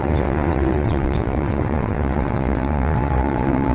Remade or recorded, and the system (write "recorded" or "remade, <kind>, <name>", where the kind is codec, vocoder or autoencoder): remade, vocoder, WaveNeXt